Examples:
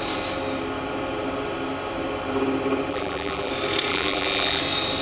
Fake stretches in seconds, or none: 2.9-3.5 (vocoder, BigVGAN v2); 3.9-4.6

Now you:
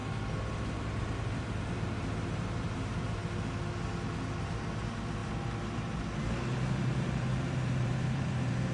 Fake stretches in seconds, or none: 0.8-3.2 (vocoder, BigVGAN v2); 4.4-5.2; 6.7-8.7

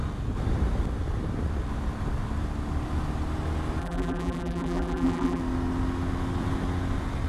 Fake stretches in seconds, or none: 3.8-5.4 (vocoder, BigVGAN v2)